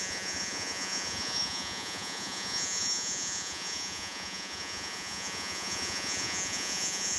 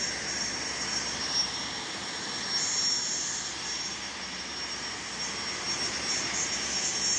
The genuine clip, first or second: second